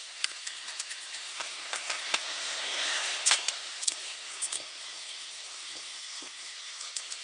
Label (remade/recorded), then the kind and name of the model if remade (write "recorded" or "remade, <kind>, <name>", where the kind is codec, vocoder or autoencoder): remade, codec, SNAC